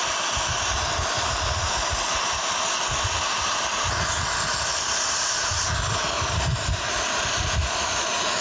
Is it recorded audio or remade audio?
recorded